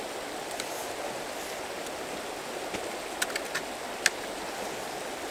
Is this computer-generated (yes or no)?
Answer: no